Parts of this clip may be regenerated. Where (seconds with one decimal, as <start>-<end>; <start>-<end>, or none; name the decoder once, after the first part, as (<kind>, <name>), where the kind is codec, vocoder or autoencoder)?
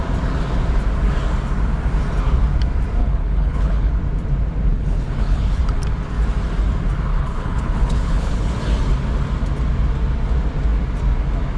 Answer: 3.0-3.9 (codec, HILCodec); 4.7-5.6; 7.1-8.6